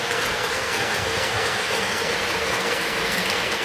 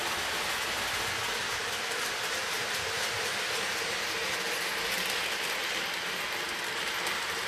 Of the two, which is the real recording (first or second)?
second